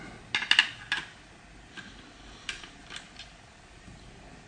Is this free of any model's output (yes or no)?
yes